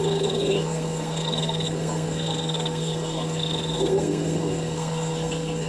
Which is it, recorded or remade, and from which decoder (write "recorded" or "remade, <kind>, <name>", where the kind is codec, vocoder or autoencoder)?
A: remade, codec, SNAC